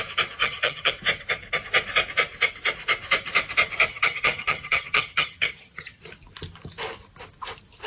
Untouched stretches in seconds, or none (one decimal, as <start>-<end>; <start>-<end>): 0.0-0.4; 0.9-3.9; 6.0-7.9